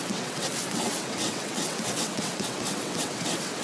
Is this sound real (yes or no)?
no